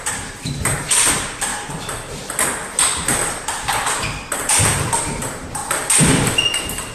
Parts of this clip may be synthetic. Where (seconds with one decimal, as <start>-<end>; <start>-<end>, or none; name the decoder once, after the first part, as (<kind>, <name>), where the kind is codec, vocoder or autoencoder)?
0.0-1.5 (vocoder, BigVGAN v2); 2.8-3.2; 4.4-5.6